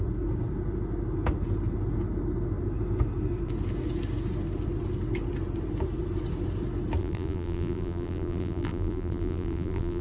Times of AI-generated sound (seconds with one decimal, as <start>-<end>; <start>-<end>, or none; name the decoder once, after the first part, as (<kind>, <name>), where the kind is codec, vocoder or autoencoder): 7.0-10.0 (vocoder, BigVGAN v2)